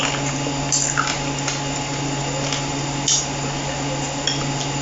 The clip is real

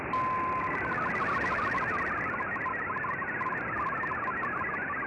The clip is real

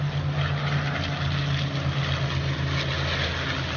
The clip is real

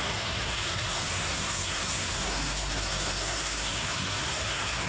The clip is fake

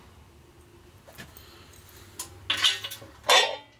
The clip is real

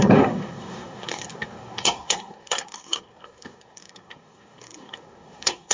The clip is fake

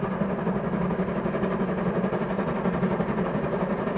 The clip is real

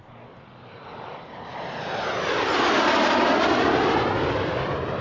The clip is real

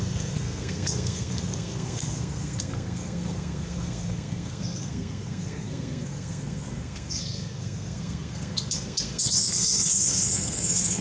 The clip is fake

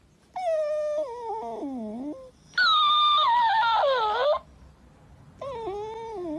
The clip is real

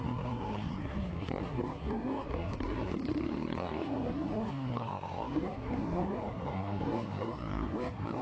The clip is fake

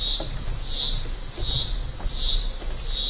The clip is real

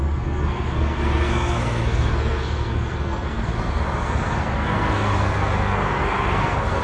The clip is fake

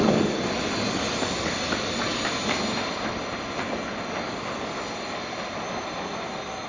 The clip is real